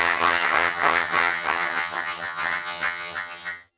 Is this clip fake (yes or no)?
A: yes